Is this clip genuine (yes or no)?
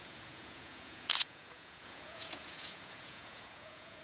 no